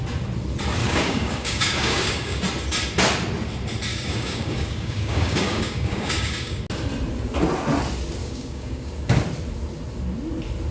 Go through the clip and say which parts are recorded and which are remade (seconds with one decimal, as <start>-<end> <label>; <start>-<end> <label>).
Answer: 0.0-0.8 recorded; 0.8-2.4 remade; 2.4-3.9 recorded; 3.9-6.6 remade; 6.6-8.2 recorded; 8.2-8.9 remade; 8.9-10.7 recorded